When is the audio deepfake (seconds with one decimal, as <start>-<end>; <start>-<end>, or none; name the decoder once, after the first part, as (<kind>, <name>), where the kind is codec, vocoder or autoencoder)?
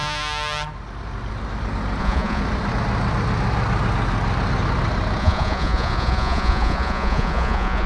2.0-2.4 (vocoder, Vocos); 5.2-7.9